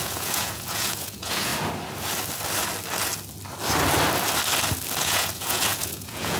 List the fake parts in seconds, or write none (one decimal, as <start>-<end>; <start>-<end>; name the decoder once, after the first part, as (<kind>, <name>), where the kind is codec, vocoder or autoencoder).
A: 0.0-1.5 (vocoder, Vocos); 5.0-6.4